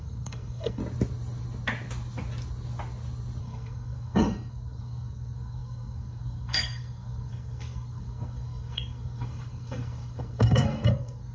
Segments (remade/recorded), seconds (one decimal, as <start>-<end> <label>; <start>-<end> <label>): 0.0-0.8 remade; 0.8-3.4 recorded; 3.4-11.3 remade